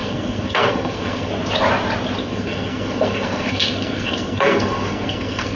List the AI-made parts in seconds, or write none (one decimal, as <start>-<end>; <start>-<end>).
0.0-1.3; 2.2-5.6